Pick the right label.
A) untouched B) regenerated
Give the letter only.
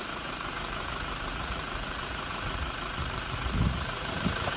B